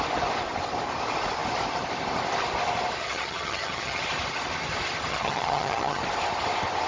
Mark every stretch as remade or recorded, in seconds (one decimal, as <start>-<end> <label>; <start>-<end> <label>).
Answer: 0.0-3.0 recorded; 3.0-4.0 remade; 4.0-5.1 recorded; 5.1-6.0 remade; 6.0-6.9 recorded